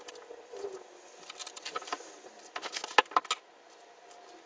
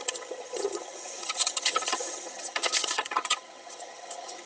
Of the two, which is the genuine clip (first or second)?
first